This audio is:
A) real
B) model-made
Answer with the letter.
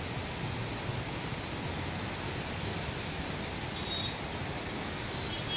A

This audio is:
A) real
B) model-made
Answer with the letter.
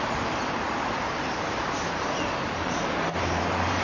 B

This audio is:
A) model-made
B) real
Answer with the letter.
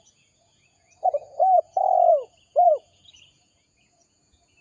A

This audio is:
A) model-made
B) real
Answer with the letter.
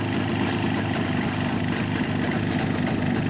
B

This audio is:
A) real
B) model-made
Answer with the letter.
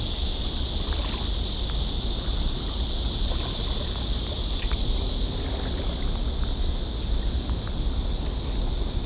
A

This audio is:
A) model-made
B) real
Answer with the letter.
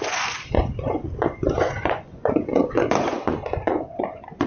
A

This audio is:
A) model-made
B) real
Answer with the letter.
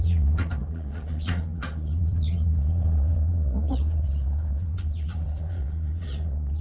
A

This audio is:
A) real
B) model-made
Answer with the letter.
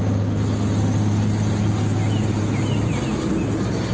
A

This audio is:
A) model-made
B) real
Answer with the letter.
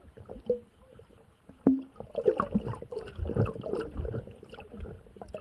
B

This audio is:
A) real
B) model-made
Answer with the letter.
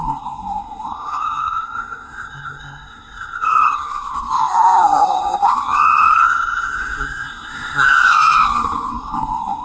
B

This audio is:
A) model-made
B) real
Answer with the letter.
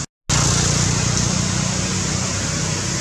B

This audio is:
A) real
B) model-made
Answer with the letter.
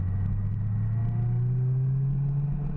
A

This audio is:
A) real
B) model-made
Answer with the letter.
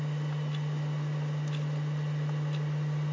A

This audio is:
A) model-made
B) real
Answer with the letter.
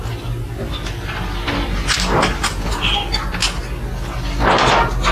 B